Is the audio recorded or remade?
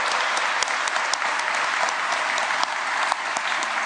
recorded